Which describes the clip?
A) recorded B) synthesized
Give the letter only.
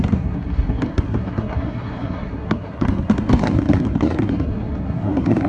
B